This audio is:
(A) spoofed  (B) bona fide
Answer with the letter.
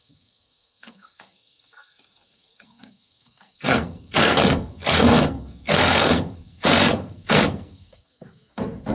A